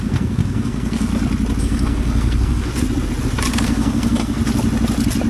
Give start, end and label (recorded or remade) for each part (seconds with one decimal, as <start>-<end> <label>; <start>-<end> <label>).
0.0-1.1 remade; 1.1-1.6 recorded; 1.6-2.7 remade; 2.7-3.5 recorded; 3.5-4.4 remade; 4.4-5.3 recorded